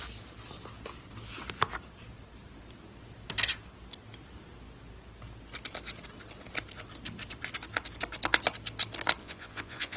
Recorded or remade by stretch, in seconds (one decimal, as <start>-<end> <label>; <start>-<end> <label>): 0.0-9.2 recorded; 9.2-10.0 remade